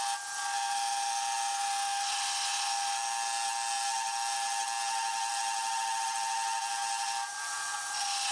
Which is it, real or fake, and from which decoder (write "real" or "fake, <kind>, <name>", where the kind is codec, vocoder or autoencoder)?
real